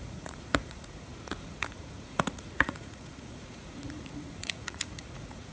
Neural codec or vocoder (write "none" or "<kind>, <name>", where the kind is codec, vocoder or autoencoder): vocoder, Vocos